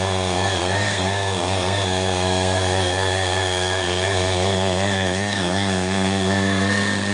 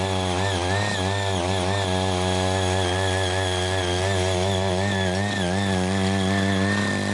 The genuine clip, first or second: second